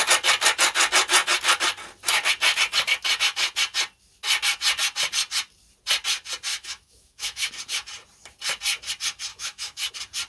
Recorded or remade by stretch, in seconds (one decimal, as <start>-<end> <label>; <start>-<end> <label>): 0.0-6.5 recorded; 6.5-7.5 remade; 7.5-9.3 recorded; 9.3-9.9 remade; 9.9-10.3 recorded